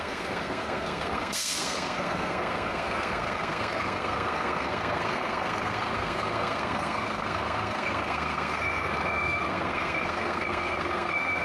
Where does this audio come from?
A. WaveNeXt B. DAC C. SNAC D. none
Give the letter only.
C